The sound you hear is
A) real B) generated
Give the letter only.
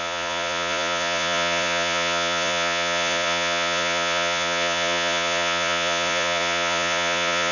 B